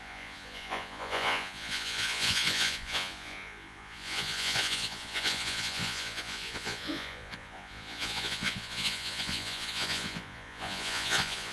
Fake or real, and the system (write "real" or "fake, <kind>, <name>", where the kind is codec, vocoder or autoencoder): fake, vocoder, Vocos